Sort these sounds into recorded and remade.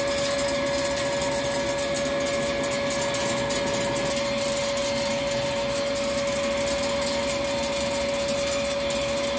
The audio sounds recorded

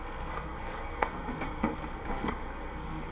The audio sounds remade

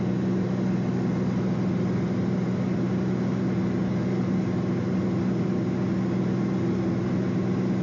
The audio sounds recorded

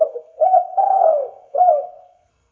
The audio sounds remade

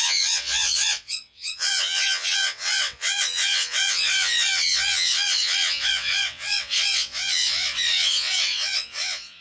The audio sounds remade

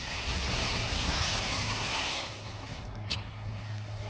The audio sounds remade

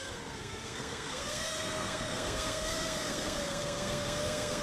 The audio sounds remade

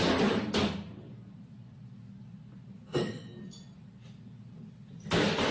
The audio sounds recorded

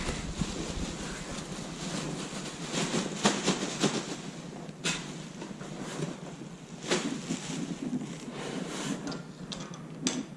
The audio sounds recorded